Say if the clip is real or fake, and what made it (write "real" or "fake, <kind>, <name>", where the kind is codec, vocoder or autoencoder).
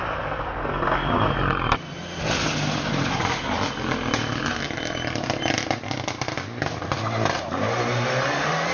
real